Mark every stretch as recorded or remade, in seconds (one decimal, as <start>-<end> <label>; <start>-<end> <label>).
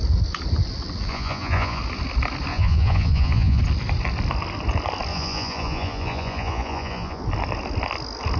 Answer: 0.0-1.1 recorded; 1.1-1.8 remade; 1.8-2.5 recorded; 2.5-3.6 remade; 3.6-5.1 recorded; 5.1-7.2 remade; 7.2-8.4 recorded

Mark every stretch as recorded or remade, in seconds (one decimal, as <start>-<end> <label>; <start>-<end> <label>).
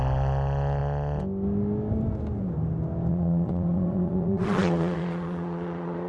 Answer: 0.0-3.1 recorded; 3.1-6.1 remade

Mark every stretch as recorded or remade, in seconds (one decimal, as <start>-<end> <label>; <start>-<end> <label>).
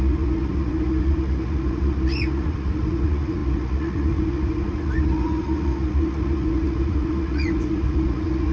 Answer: 0.0-8.5 remade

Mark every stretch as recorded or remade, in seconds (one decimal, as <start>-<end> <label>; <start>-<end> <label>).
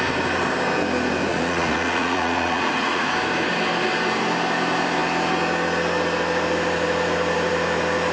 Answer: 0.0-1.3 recorded; 1.3-3.1 remade; 3.1-8.1 recorded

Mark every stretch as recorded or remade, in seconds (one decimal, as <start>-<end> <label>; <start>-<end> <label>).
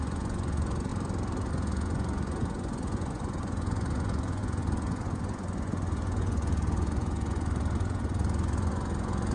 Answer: 0.0-0.9 remade; 0.9-1.5 recorded; 1.5-9.3 remade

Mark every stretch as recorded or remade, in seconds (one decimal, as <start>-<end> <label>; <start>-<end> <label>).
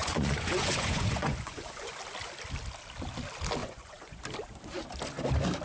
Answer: 0.0-2.0 remade; 2.0-3.6 recorded; 3.6-4.2 remade; 4.2-5.6 recorded